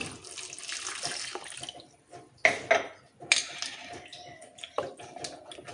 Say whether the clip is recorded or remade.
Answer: recorded